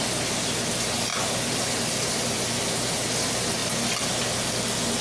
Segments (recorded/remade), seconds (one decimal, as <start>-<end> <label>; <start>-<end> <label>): 0.0-5.0 recorded